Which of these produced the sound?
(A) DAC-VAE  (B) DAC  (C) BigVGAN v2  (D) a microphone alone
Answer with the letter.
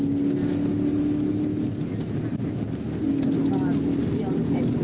D